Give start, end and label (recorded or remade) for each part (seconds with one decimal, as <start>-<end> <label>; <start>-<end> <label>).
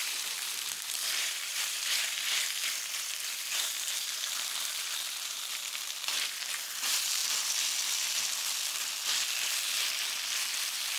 0.0-7.2 remade; 7.2-10.6 recorded; 10.6-11.0 remade